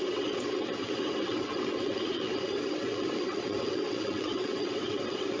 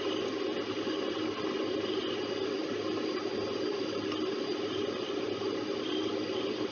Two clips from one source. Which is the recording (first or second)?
second